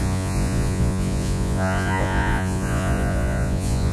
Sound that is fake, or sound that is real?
fake